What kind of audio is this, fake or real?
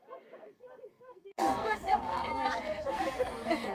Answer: fake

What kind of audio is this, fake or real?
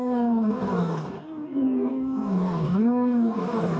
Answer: fake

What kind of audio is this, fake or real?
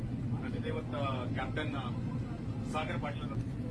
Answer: real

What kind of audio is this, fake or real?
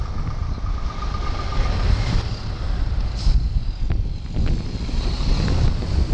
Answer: real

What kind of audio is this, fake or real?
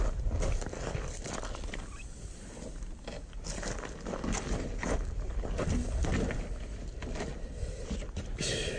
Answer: real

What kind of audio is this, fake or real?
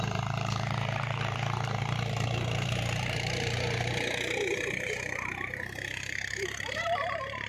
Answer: fake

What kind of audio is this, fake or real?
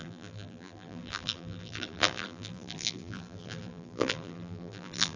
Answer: fake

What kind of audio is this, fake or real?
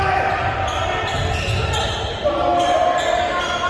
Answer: real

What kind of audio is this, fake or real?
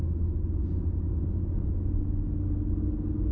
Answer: real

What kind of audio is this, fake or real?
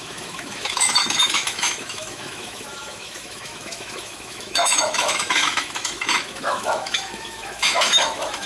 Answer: fake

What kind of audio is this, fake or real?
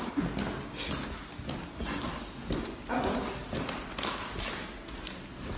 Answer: real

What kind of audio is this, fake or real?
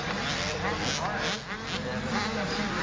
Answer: real